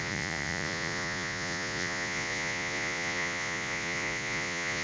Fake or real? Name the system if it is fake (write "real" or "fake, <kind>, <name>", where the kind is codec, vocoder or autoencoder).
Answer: fake, vocoder, Vocos